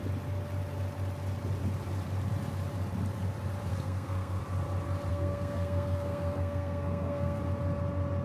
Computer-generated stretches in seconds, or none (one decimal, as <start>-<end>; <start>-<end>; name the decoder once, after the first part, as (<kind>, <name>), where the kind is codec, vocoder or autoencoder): 3.7-4.4 (codec, SNAC); 5.1-7.4